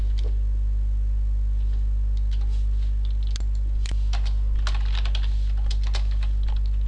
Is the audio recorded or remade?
recorded